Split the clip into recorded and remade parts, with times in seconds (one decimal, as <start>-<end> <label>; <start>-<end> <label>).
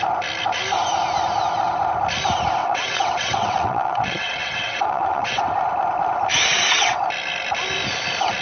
0.0-2.6 recorded; 2.6-5.4 remade; 5.4-6.5 recorded; 6.5-7.0 remade; 7.0-8.4 recorded